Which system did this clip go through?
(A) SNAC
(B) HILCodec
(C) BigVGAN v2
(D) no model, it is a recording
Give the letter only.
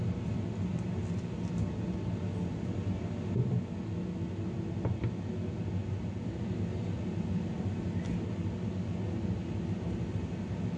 D